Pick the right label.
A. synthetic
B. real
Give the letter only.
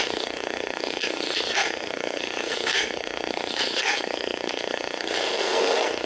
A